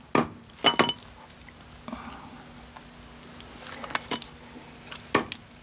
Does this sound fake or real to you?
real